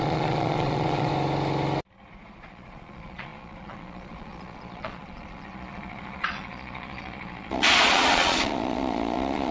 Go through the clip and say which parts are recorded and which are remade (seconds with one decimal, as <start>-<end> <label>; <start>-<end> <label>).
0.0-1.1 remade; 1.1-2.1 recorded; 2.1-9.5 remade